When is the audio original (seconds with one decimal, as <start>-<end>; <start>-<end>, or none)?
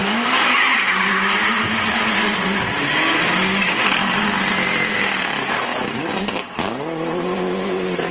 0.0-8.1